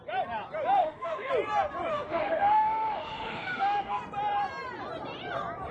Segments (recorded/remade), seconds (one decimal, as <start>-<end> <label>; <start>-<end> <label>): 0.0-0.8 recorded; 0.8-1.3 remade; 1.3-1.9 recorded; 1.9-4.0 remade; 4.0-5.7 recorded